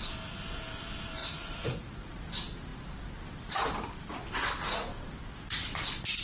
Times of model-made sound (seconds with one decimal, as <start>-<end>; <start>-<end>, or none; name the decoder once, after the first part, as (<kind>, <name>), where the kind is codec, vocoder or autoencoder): 1.2-2.2 (vocoder, Vocos)

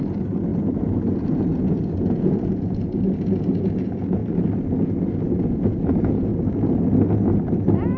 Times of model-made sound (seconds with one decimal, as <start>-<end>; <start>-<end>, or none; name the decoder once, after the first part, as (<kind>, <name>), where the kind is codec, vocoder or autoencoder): 0.0-4.2 (vocoder, Vocos); 4.8-6.3

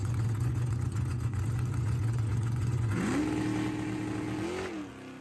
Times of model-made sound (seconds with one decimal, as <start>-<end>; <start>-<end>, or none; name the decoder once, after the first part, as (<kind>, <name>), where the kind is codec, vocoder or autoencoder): 0.0-3.1 (vocoder, Vocos)

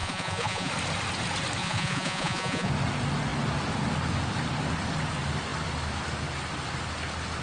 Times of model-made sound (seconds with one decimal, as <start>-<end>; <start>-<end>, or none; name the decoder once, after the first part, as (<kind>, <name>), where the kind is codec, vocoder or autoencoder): 0.0-0.7 (vocoder, Vocos); 1.6-2.7

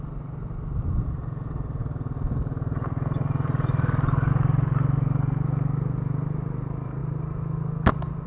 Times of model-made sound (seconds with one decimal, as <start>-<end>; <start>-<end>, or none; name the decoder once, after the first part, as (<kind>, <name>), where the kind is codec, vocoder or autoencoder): none